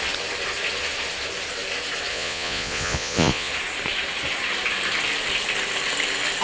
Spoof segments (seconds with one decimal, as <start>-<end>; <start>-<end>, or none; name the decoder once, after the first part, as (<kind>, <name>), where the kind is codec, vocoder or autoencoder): 2.1-3.5 (vocoder, Vocos)